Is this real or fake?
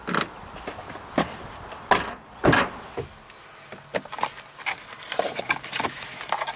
real